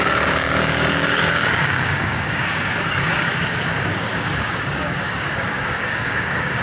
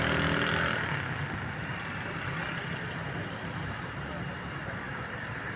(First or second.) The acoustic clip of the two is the second